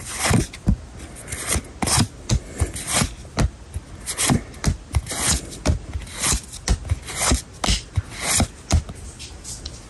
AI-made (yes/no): no